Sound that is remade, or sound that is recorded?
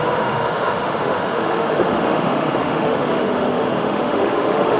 remade